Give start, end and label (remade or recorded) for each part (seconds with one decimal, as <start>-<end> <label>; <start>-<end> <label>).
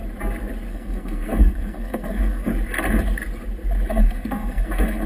0.0-0.7 recorded; 0.7-2.5 remade; 2.5-3.9 recorded; 3.9-5.1 remade